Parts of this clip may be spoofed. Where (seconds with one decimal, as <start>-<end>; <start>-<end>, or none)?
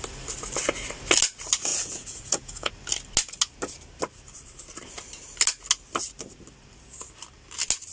1.7-2.7